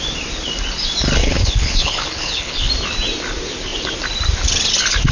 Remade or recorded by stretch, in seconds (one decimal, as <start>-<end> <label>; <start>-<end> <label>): 0.0-1.2 recorded; 1.2-2.7 remade; 2.7-5.1 recorded